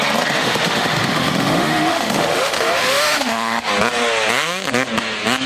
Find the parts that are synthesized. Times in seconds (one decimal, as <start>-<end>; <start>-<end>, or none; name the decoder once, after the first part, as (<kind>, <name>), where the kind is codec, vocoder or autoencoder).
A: 0.4-3.7 (autoencoder, DAC-VAE)